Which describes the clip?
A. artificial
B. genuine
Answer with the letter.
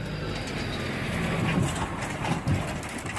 B